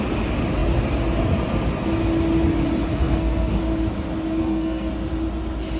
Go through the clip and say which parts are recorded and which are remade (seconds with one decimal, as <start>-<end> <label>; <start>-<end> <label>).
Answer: 0.0-2.9 recorded; 2.9-3.6 remade; 3.6-4.4 recorded; 4.4-4.9 remade; 4.9-5.8 recorded

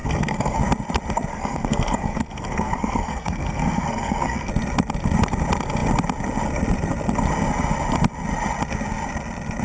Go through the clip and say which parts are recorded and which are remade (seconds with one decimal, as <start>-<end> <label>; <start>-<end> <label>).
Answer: 0.0-0.6 remade; 0.6-1.3 recorded; 1.3-4.5 remade; 4.5-9.6 recorded

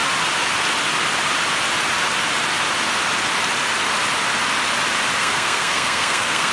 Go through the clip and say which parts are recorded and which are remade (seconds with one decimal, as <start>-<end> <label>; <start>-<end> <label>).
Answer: 0.0-5.2 recorded; 5.2-6.5 remade

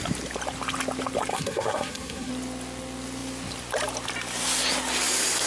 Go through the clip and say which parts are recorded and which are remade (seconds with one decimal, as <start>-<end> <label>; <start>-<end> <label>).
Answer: 0.0-1.3 recorded; 1.3-2.3 remade; 2.3-5.5 recorded